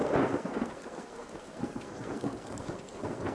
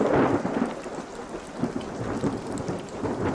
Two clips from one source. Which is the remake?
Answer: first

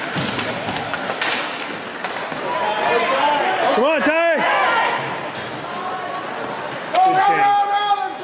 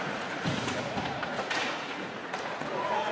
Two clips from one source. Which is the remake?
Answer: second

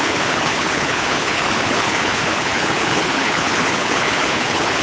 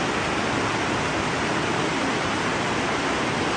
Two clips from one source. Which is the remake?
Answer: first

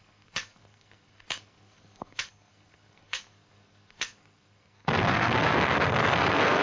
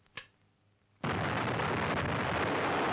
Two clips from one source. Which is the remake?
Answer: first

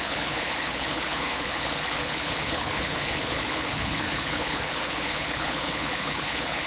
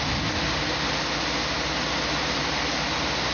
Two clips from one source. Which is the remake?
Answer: first